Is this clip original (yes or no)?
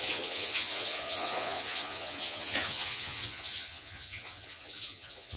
no